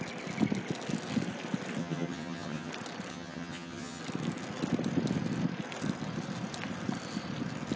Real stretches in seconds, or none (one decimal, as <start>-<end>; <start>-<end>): 0.0-1.8; 2.7-3.1; 4.0-7.8